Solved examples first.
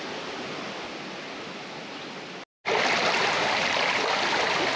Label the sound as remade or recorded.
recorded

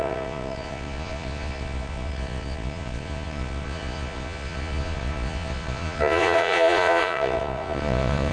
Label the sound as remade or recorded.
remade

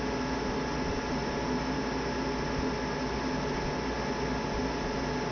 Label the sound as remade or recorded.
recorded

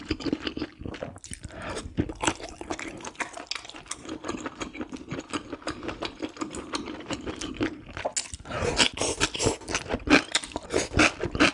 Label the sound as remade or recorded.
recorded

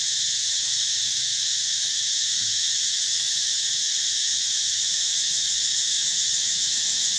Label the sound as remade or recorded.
remade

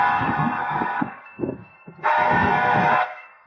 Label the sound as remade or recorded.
remade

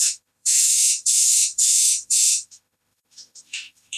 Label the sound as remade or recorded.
remade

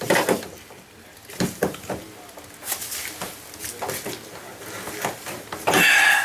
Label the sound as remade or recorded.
recorded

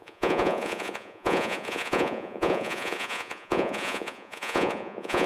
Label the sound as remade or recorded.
remade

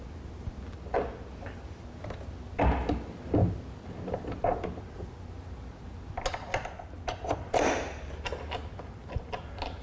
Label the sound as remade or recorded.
recorded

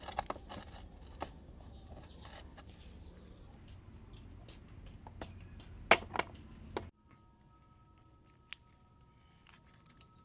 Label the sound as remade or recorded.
recorded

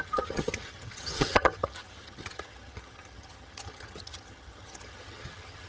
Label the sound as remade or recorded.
remade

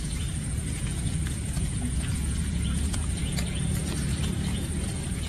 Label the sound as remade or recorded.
remade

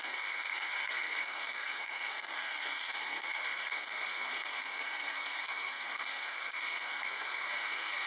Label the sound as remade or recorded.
remade